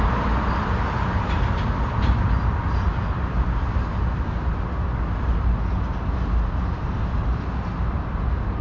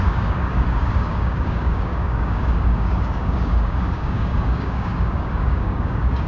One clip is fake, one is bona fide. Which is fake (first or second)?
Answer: second